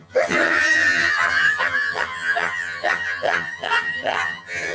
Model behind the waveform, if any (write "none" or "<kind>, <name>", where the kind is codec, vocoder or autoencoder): vocoder, HiFi-GAN